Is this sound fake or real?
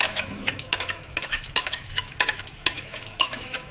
fake